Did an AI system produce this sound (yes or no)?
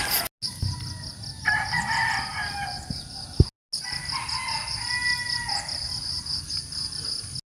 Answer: no